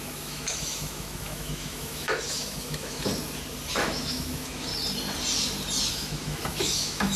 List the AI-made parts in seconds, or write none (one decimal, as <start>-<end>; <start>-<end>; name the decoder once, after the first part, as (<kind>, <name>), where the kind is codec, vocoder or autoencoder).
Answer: 0.0-3.1 (autoencoder, DAC-VAE); 3.7-4.7; 5.9-7.2